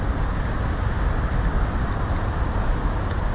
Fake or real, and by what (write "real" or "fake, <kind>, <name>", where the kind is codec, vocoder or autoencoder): real